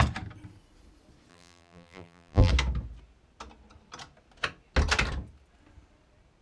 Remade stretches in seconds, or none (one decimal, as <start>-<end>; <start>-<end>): 1.3-2.5